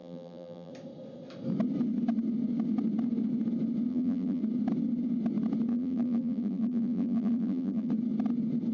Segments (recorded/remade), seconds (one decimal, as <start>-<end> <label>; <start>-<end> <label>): 0.0-0.7 remade; 0.7-3.9 recorded; 3.9-4.4 remade; 4.4-5.7 recorded; 5.7-7.9 remade; 7.9-8.7 recorded